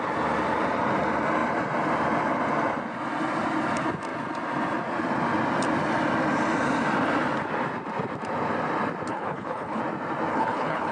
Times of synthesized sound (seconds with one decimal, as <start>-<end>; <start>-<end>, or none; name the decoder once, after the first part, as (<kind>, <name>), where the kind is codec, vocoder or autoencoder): 9.1-9.8 (codec, HILCodec); 10.3-10.9